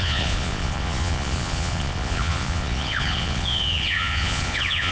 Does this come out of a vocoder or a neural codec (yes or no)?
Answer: yes